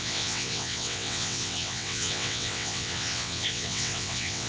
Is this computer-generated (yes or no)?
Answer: yes